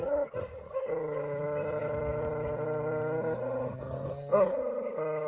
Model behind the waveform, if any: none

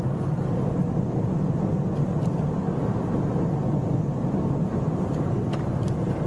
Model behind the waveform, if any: none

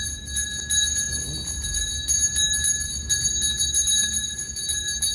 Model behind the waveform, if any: none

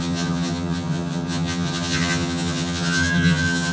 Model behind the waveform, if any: vocoder, HiFi-GAN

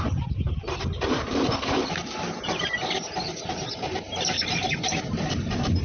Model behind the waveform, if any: vocoder, BigVGAN v2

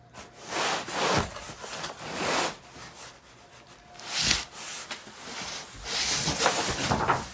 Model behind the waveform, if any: none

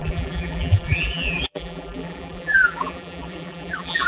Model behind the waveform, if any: vocoder, BigVGAN v2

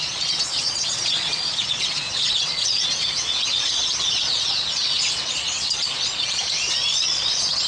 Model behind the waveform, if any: vocoder, Vocos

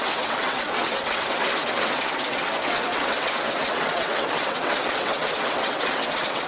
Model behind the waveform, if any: vocoder, WaveNeXt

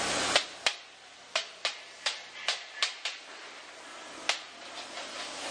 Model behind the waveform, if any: none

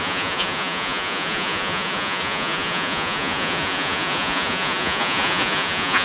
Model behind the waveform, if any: vocoder, Vocos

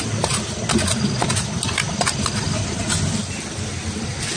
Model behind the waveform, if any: none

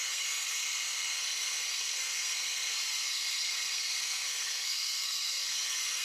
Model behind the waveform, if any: codec, SNAC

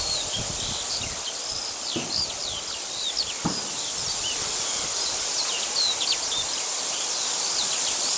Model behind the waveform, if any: none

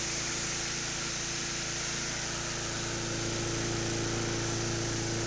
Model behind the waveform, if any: none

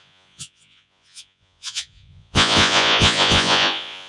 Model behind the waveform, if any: vocoder, Vocos